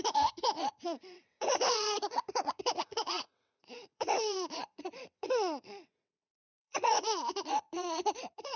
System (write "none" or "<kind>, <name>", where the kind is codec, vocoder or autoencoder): vocoder, WaveNeXt